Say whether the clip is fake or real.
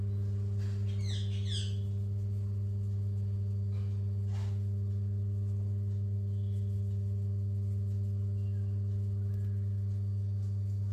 real